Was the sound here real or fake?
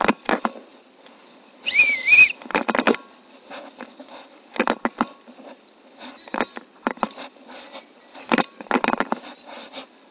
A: fake